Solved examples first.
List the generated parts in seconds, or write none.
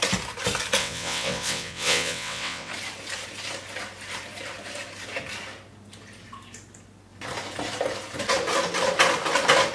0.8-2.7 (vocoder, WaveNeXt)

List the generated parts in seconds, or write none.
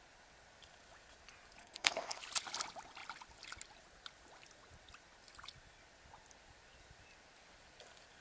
1.6-2.2 (codec, SNAC)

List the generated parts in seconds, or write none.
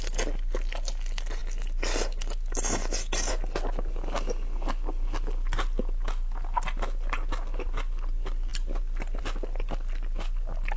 none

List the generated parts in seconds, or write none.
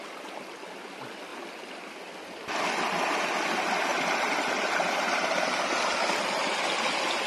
1.3-2.6 (vocoder, BigVGAN v2); 3.9-6.6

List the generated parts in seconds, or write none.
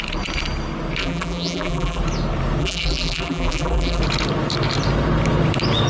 1.0-2.0 (vocoder, BigVGAN v2); 2.6-4.0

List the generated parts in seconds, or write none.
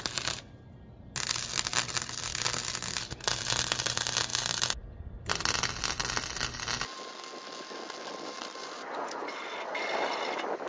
none